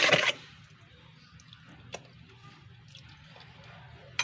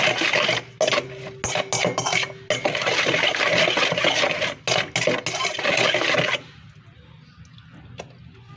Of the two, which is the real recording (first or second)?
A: second